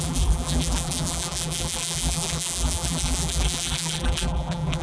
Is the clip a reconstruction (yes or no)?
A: yes